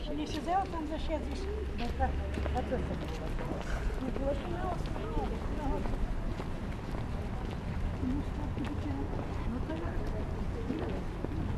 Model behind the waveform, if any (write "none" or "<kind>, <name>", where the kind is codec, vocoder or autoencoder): none